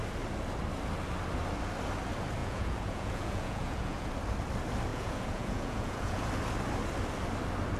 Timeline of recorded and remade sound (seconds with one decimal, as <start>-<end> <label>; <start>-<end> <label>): 0.0-2.4 recorded; 2.4-4.1 remade; 4.1-4.9 recorded; 4.9-6.3 remade; 6.3-7.8 recorded